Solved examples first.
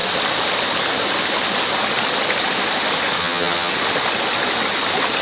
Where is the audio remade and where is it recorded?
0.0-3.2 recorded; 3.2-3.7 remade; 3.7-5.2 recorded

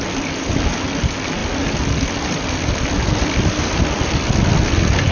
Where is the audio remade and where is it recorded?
0.0-5.1 recorded

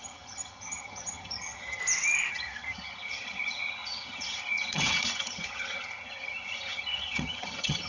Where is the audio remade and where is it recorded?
0.0-1.8 remade; 1.8-2.3 recorded; 2.3-7.9 remade

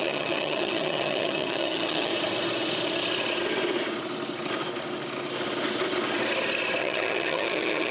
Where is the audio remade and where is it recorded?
0.0-2.1 remade; 2.1-6.8 recorded; 6.8-7.9 remade

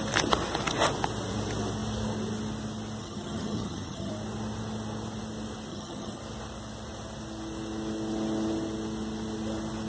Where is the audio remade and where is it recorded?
0.0-3.0 recorded; 3.0-4.1 remade; 4.1-5.7 recorded; 5.7-6.2 remade; 6.2-9.9 recorded